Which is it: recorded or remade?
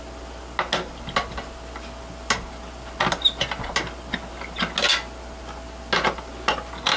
recorded